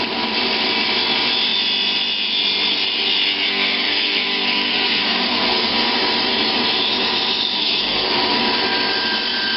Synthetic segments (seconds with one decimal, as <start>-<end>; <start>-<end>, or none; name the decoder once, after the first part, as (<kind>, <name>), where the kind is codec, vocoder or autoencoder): 3.5-5.9 (codec, SNAC); 7.6-8.4